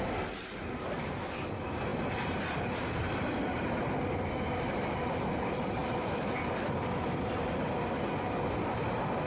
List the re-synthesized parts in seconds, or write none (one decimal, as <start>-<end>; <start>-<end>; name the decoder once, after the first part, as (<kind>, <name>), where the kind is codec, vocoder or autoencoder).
1.9-3.9 (vocoder, BigVGAN v2); 5.8-6.3